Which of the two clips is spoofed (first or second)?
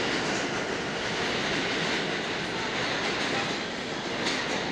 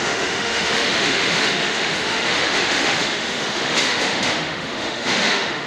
second